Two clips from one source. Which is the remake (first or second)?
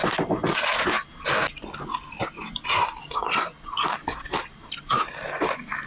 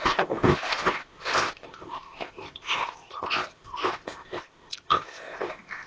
second